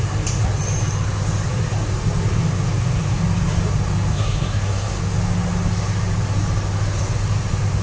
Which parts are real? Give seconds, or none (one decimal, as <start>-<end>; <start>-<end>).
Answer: 0.0-4.1; 5.0-7.8